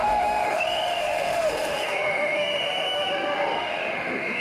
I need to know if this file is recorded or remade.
remade